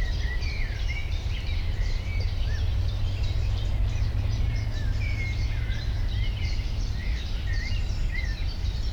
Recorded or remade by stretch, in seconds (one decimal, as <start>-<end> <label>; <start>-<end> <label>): 0.0-8.9 remade